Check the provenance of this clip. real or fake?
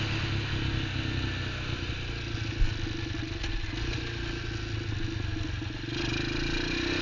real